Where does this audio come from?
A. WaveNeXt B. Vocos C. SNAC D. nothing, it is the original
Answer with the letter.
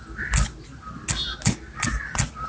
D